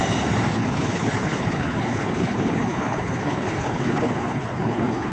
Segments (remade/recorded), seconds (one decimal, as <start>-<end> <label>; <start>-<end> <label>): 0.0-0.5 recorded; 0.5-5.1 remade